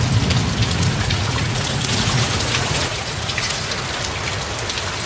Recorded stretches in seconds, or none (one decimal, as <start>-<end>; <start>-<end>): 0.0-0.6; 3.7-5.1

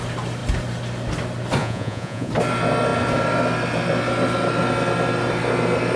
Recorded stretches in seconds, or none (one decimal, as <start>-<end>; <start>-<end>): 0.0-1.6; 2.3-6.0

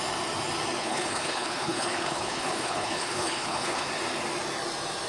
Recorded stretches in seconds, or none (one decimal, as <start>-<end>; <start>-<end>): 0.0-0.8; 3.9-5.1